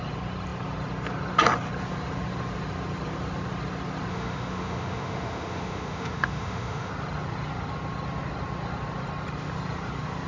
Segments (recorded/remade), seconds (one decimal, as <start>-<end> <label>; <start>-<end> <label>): 0.0-4.1 recorded; 4.1-6.9 remade; 6.9-10.3 recorded